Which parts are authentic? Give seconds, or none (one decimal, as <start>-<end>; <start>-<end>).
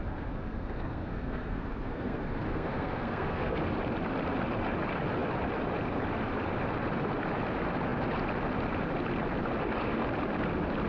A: 3.6-10.9